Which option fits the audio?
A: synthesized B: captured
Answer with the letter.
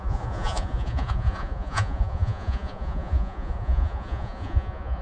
A